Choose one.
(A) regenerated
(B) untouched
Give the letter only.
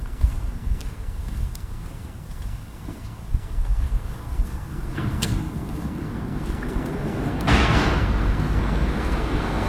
A